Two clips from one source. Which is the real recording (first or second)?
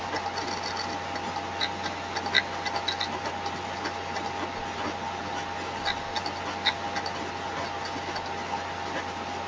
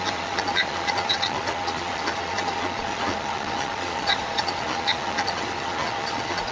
first